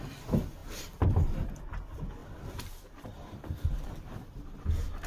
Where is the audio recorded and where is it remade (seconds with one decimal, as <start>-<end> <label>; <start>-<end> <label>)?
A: 0.0-0.6 recorded; 0.6-1.5 remade; 1.5-2.2 recorded; 2.2-5.1 remade